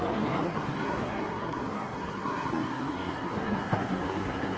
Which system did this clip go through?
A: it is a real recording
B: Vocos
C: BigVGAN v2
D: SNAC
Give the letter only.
D